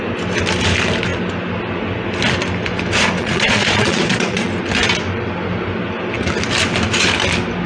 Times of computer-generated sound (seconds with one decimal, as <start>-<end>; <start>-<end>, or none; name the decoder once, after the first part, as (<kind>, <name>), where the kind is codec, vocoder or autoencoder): 3.2-4.5 (vocoder, Vocos)